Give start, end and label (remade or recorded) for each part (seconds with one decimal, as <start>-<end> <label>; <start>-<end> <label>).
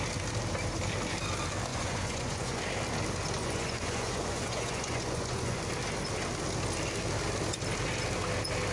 0.0-1.7 recorded; 1.7-2.6 remade; 2.6-3.4 recorded; 3.4-5.6 remade; 5.6-8.7 recorded